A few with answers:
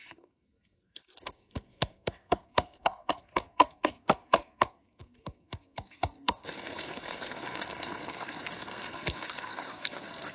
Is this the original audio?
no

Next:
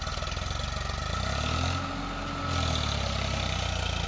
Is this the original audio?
yes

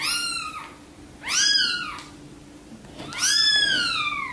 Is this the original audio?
yes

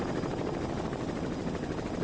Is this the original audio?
yes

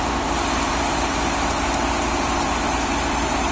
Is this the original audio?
yes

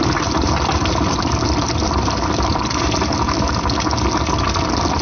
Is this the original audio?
yes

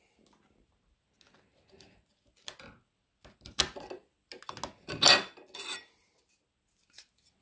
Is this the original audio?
yes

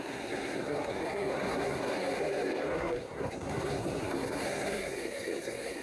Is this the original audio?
no